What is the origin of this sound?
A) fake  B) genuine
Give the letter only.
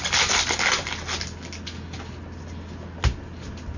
B